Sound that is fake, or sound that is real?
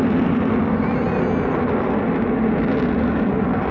real